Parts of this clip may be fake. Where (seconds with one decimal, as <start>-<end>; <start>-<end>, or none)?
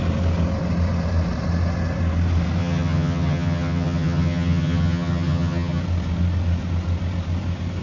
2.6-5.8